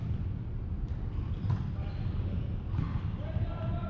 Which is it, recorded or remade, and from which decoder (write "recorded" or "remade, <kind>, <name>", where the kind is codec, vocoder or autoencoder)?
recorded